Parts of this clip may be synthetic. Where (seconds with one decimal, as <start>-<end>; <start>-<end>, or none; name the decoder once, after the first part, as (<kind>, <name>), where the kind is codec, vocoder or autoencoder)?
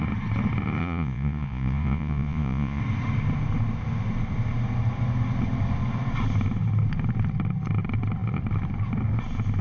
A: 0.8-2.8 (vocoder, Vocos)